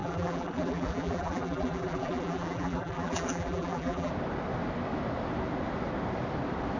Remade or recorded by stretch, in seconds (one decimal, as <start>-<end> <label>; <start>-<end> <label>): 0.0-4.1 remade; 4.1-6.8 recorded